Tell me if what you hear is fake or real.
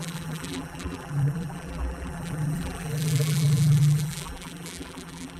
fake